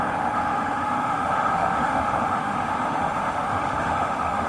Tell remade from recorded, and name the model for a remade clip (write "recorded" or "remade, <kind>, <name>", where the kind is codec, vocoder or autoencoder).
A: remade, autoencoder, DAC-VAE